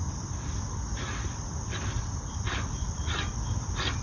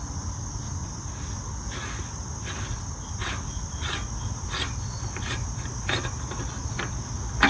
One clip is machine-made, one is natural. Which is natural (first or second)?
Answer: second